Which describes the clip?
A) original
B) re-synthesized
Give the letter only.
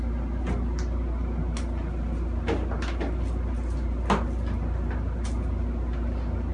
A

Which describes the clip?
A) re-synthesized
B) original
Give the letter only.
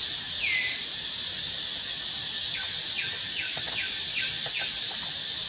B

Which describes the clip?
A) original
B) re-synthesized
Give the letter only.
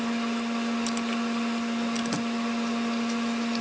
A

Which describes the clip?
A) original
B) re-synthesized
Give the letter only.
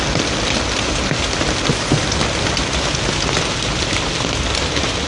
A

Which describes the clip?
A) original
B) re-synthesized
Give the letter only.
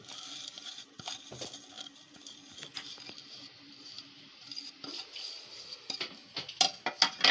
A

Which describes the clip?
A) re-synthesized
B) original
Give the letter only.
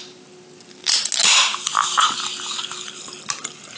B